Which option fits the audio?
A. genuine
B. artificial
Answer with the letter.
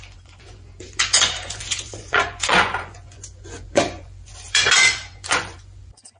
B